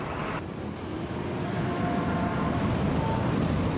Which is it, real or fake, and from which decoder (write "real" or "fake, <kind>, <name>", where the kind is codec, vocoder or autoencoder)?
real